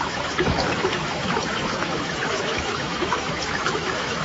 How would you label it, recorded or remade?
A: remade